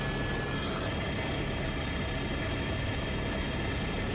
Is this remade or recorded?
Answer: recorded